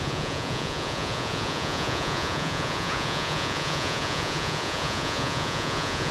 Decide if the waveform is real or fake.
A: fake